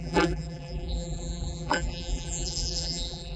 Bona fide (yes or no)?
no